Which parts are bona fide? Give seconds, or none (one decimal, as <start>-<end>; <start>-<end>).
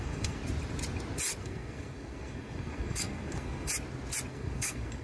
0.4-1.4; 3.7-4.3